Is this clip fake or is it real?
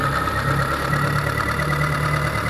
fake